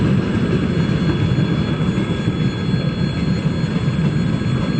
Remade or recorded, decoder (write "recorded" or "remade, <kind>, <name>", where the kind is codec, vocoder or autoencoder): recorded